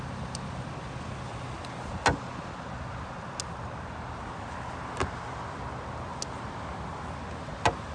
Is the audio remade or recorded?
recorded